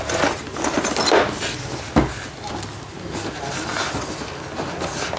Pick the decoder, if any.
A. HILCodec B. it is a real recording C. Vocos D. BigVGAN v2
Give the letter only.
B